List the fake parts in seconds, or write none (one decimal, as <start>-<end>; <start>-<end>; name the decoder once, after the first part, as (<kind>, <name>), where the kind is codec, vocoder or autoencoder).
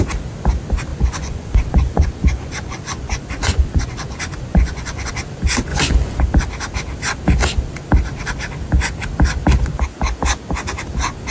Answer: 0.9-5.1 (vocoder, Vocos); 5.7-6.2